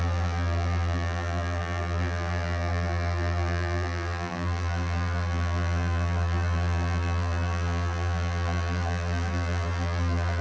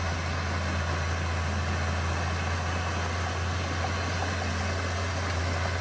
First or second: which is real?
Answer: second